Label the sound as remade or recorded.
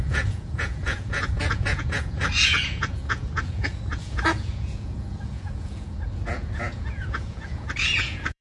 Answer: remade